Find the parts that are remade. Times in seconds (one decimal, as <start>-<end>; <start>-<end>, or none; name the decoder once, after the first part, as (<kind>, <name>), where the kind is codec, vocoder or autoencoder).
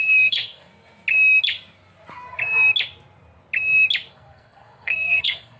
0.0-0.7 (codec, SNAC); 4.1-5.6